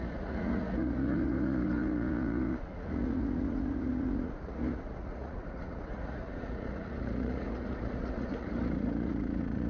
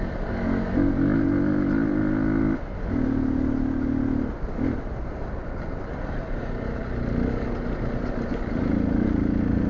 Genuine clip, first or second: second